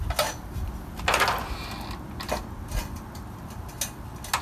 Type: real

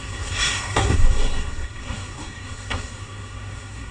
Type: fake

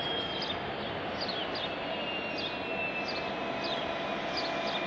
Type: real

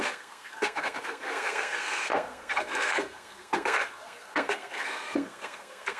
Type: fake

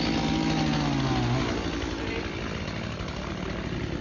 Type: real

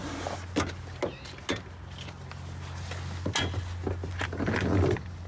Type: real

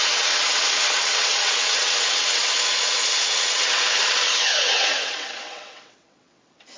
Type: fake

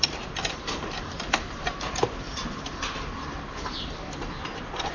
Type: fake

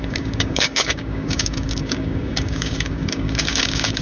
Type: fake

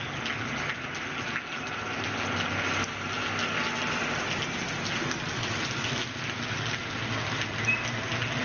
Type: real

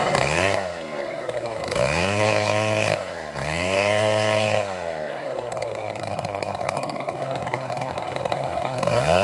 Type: fake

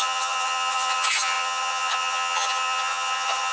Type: fake